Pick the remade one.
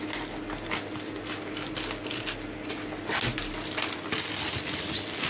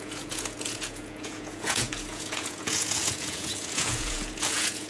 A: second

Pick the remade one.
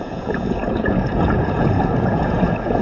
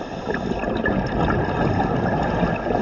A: first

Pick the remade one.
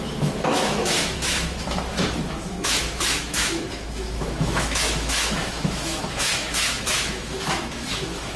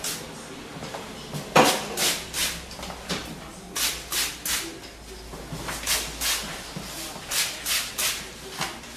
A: first